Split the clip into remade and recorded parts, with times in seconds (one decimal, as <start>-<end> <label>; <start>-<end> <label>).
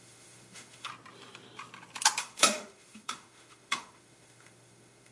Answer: 0.0-0.9 remade; 0.9-2.2 recorded; 2.2-5.1 remade